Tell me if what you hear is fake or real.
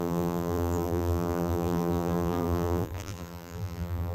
fake